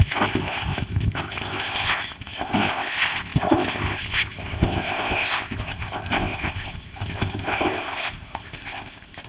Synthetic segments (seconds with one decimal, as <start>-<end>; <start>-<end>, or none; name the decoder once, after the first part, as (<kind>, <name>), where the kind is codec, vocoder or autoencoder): 0.0-9.3 (codec, ZipCodec)